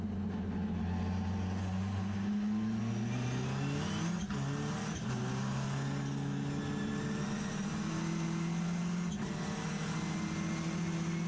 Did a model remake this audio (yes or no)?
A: no